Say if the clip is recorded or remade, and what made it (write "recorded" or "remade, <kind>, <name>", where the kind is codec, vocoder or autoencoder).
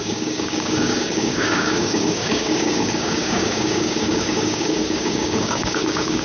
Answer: remade, codec, DAC